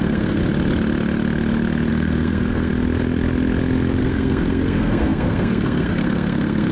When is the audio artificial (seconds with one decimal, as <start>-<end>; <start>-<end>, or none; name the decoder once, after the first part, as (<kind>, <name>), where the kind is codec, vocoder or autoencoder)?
0.0-0.4 (codec, SNAC); 1.9-2.7; 4.0-6.7